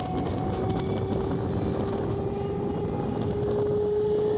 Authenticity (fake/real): real